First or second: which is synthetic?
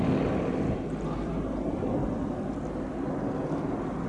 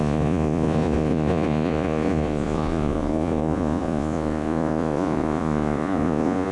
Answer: second